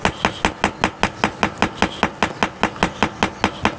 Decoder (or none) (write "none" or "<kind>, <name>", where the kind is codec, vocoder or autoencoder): none